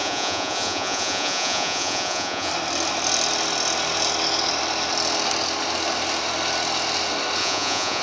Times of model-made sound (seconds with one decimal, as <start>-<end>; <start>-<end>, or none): 0.0-2.5; 7.4-8.0